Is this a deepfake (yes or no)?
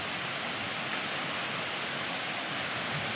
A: no